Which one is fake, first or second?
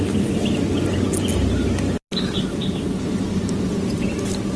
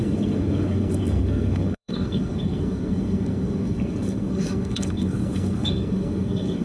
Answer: second